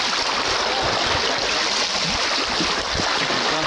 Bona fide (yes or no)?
yes